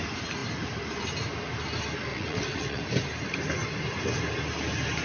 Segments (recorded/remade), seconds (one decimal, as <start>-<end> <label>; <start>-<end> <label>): 0.0-2.1 recorded; 2.1-2.8 remade; 2.8-5.0 recorded